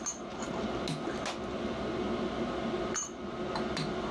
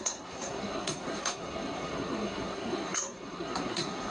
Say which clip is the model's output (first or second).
second